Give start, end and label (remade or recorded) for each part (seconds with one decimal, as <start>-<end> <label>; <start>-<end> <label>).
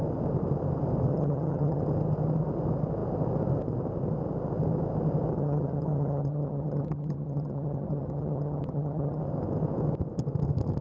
0.0-1.1 recorded; 1.1-1.8 remade; 1.8-5.3 recorded; 5.3-9.2 remade; 9.2-10.8 recorded